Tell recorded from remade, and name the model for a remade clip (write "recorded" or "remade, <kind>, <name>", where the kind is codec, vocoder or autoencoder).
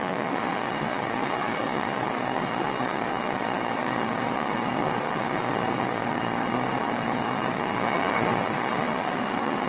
remade, vocoder, Vocos